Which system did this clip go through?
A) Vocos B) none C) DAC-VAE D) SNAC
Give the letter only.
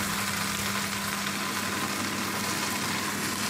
B